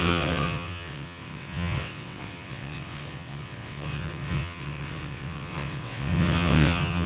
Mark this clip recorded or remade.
remade